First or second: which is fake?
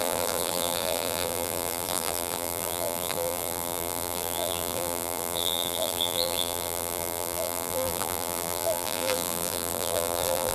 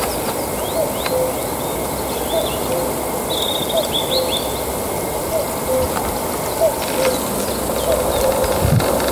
first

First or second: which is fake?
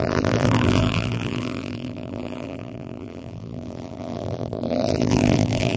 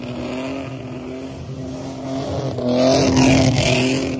first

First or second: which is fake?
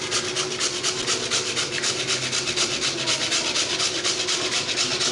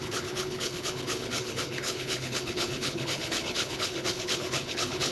second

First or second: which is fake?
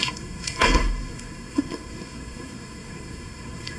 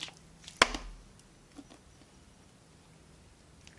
first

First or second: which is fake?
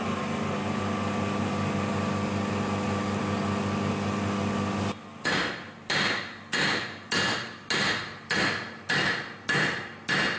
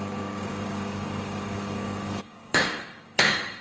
second